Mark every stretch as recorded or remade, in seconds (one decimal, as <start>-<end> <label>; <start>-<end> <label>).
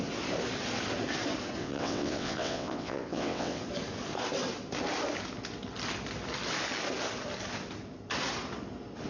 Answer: 0.0-1.6 recorded; 1.6-3.6 remade; 3.6-9.1 recorded